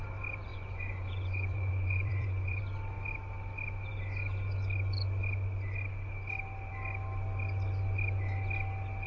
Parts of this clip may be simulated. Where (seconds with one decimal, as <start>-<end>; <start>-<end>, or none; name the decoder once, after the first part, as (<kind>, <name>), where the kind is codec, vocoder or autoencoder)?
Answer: 0.5-2.6 (vocoder, Vocos)